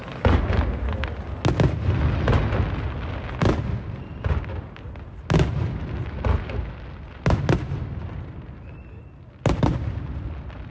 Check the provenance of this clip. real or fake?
real